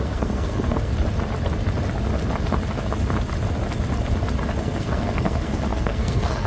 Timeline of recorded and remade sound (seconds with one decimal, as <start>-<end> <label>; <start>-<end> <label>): 0.0-0.9 remade; 0.9-4.6 recorded; 4.6-6.5 remade